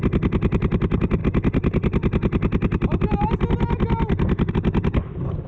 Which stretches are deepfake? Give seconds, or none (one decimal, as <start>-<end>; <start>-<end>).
none